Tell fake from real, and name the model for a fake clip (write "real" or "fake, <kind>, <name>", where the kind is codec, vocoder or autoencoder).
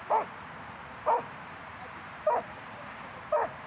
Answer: fake, vocoder, BigVGAN v2